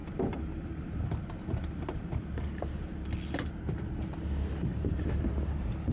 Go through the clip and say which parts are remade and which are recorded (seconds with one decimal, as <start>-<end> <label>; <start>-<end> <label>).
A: 0.0-3.5 remade; 3.5-4.7 recorded; 4.7-5.3 remade; 5.3-5.9 recorded